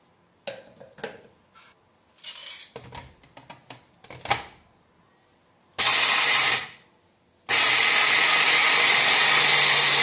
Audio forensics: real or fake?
real